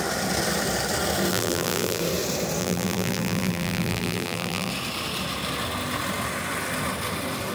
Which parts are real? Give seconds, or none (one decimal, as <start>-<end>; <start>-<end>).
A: 0.0-1.3; 2.0-2.6; 4.7-7.5